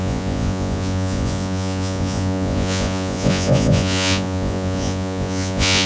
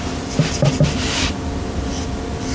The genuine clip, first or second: second